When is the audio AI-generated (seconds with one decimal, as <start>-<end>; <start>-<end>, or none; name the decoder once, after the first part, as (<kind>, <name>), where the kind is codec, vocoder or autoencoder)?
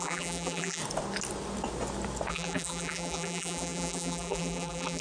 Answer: 0.0-0.8 (vocoder, BigVGAN v2); 2.3-5.0